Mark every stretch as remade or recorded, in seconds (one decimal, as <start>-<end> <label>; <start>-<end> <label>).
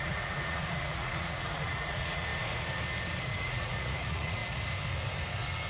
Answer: 0.0-2.3 remade; 2.3-3.4 recorded; 3.4-4.4 remade; 4.4-5.7 recorded